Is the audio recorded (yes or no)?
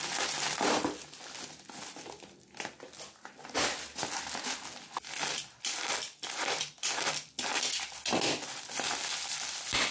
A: yes